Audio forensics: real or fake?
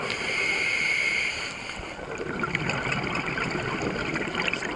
real